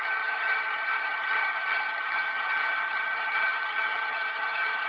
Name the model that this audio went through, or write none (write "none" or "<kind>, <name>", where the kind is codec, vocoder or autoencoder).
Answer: vocoder, HiFi-GAN